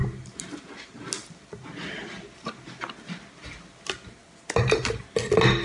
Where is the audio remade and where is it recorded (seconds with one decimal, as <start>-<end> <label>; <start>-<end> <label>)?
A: 0.0-1.1 remade; 1.1-5.6 recorded